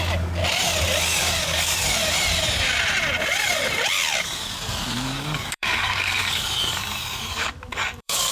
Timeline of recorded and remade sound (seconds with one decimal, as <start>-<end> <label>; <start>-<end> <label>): 0.0-0.4 remade; 0.4-1.2 recorded; 1.2-2.0 remade; 2.0-4.2 recorded; 4.2-8.3 remade